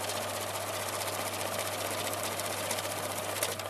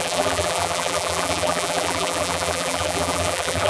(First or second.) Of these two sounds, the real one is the first